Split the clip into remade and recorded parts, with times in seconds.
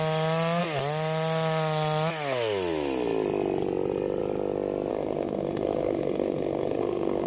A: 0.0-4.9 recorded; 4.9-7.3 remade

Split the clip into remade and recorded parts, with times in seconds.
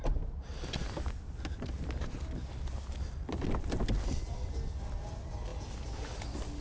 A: 0.0-6.6 recorded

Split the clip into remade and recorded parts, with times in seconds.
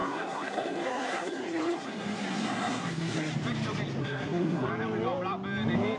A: 0.0-3.3 remade; 3.3-4.0 recorded; 4.0-4.7 remade; 4.7-6.0 recorded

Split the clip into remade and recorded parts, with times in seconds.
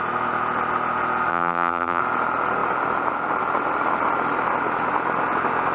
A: 0.0-1.3 recorded; 1.3-2.0 remade; 2.0-5.7 recorded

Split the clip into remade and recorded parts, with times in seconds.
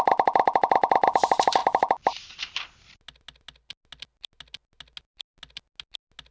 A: 0.0-6.3 recorded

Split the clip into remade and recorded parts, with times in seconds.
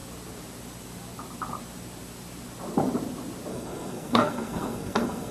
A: 0.0-3.5 recorded; 3.5-5.3 remade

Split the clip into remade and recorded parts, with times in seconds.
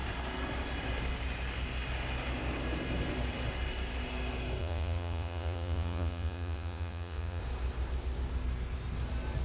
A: 0.0-4.6 recorded; 4.6-7.4 remade; 7.4-9.4 recorded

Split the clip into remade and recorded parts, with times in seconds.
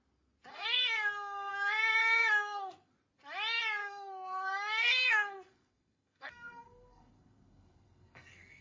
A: 0.0-0.5 recorded; 0.5-1.5 remade; 1.5-2.0 recorded; 2.0-2.9 remade; 2.9-3.8 recorded; 3.8-8.6 remade